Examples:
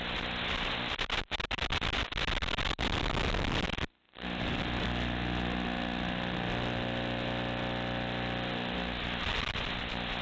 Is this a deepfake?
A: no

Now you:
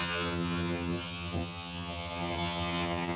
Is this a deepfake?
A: yes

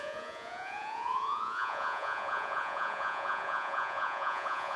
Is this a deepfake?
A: yes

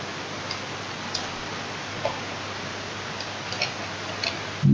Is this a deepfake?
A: no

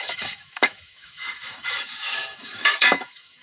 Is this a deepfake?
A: yes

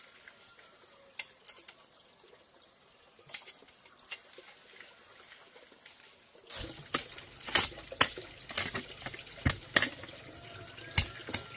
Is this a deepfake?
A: no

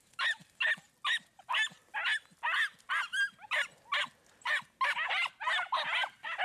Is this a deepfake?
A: no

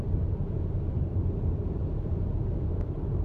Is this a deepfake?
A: yes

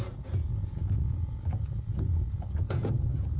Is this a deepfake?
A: yes